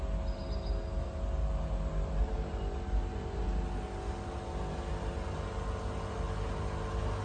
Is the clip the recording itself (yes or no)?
yes